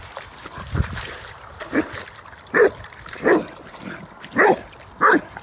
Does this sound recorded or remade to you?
recorded